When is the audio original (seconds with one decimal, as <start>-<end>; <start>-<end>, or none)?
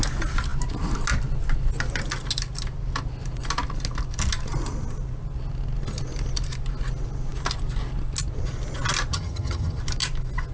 0.0-9.1; 9.8-10.5